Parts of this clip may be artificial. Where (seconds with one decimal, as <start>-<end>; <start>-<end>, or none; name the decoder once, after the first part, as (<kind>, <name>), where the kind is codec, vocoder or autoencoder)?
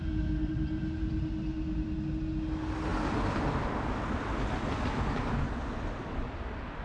none